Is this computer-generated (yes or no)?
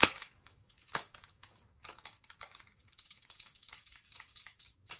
yes